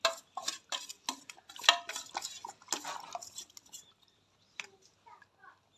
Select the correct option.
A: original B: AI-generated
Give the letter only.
A